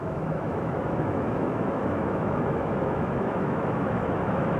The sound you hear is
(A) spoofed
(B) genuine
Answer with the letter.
A